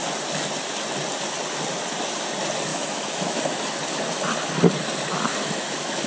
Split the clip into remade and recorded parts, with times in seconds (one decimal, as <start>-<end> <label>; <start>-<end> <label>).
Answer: 0.0-2.7 recorded; 2.7-3.6 remade; 3.6-5.3 recorded; 5.3-6.1 remade